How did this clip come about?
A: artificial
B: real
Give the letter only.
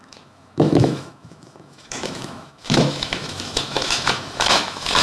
A